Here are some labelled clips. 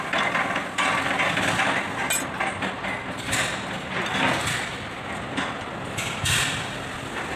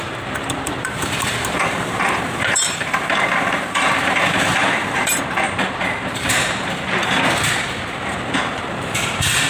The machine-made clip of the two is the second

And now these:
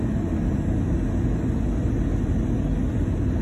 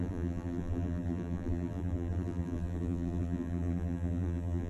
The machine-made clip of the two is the second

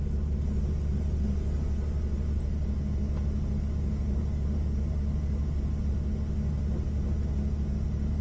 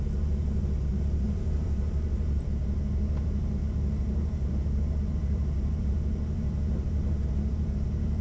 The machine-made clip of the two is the second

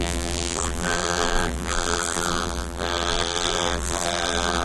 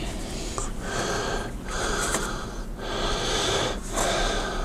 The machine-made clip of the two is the first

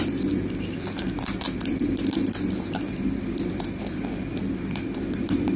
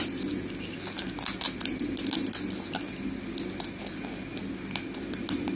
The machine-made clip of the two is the first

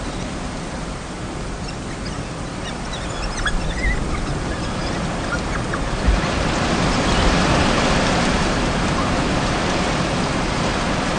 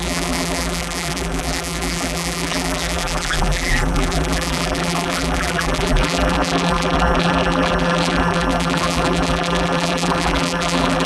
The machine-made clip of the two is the second